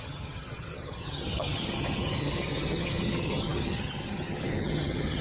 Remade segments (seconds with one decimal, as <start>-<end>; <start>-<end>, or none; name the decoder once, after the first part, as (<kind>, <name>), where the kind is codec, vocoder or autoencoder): 0.0-5.2 (vocoder, HiFi-GAN)